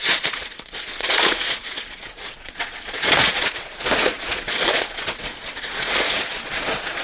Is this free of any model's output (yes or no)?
no